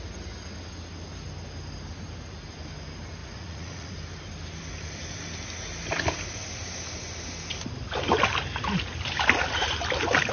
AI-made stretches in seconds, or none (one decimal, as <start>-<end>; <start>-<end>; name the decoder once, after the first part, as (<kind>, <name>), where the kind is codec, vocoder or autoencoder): 3.2-3.9 (vocoder, Vocos)